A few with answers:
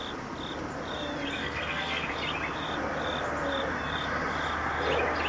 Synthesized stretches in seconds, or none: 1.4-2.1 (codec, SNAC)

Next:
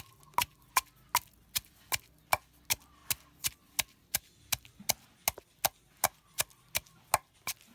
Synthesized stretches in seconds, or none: none

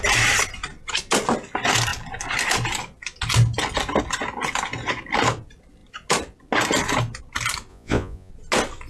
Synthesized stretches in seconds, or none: 7.7-8.3 (vocoder, Vocos)